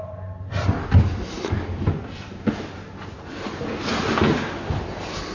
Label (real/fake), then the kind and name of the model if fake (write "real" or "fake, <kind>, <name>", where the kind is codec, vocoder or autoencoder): real